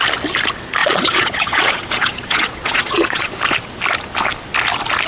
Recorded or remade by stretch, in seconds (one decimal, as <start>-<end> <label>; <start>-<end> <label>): 0.0-0.8 recorded; 0.8-3.3 remade; 3.3-5.1 recorded